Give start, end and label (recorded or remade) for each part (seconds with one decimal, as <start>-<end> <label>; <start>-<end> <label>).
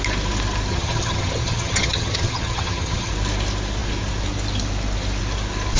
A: 0.0-0.7 recorded; 0.7-3.1 remade; 3.1-5.8 recorded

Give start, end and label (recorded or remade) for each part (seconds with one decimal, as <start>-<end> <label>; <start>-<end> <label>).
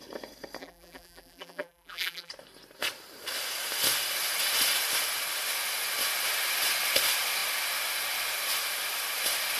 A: 0.0-0.6 recorded; 0.6-2.3 remade; 2.3-9.6 recorded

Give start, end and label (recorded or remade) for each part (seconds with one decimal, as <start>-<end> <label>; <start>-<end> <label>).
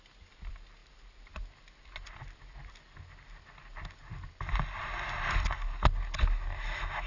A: 0.0-7.1 recorded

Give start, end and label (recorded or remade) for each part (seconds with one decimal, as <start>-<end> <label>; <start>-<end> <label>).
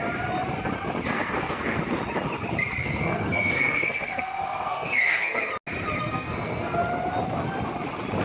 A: 0.0-1.1 recorded; 1.1-1.8 remade; 1.8-2.8 recorded; 2.8-5.5 remade; 5.5-6.0 recorded; 6.0-6.8 remade; 6.8-8.2 recorded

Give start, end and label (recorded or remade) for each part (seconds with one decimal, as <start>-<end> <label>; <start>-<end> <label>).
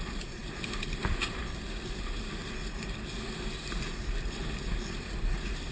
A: 0.0-5.7 recorded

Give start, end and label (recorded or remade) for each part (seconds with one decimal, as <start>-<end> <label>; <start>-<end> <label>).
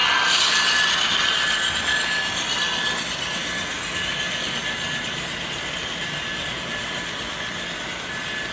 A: 0.0-8.5 recorded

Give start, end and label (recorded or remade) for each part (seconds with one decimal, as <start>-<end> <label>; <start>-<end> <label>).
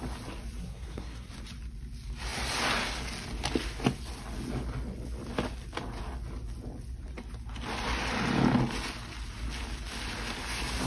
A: 0.0-0.6 recorded; 0.6-1.3 remade; 1.3-10.9 recorded